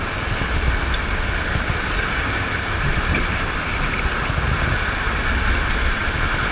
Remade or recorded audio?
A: recorded